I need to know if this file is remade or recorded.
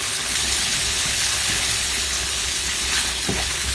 remade